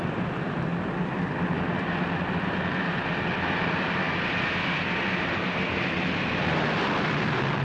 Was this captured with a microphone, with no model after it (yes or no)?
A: no